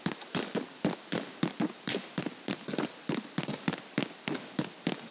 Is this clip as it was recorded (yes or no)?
no